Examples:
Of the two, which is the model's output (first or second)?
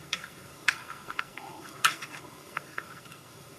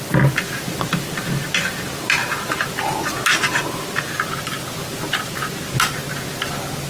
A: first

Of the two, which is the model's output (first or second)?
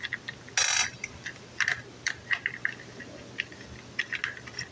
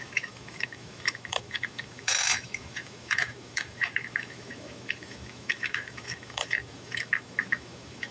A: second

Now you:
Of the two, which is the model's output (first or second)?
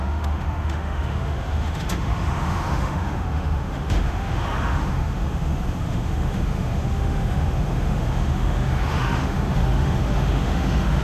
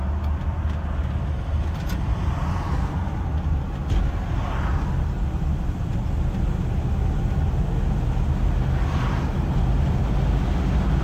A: first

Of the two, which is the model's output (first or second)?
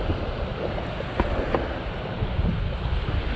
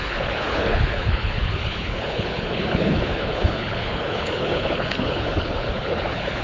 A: second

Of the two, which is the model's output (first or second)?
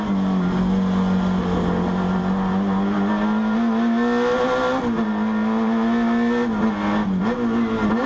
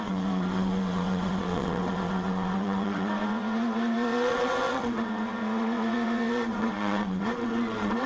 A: second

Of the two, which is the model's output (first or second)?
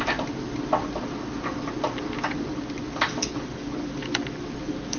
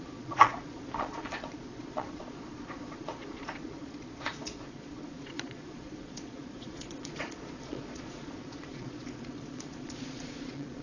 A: second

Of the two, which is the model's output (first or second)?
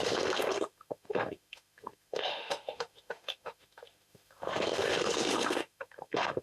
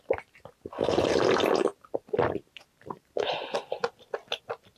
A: first